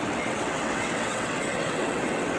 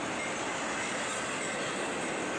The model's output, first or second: first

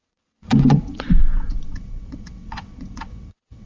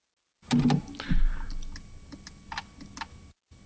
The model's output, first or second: first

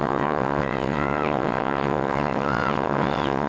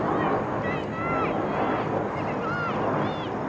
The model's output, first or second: first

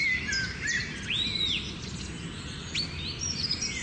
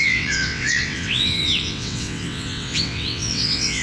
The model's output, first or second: second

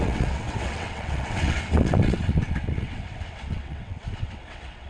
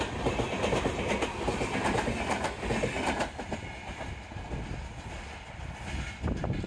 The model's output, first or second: first